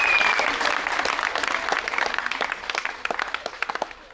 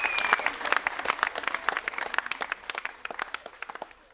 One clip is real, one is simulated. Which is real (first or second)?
second